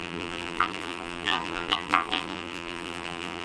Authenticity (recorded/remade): remade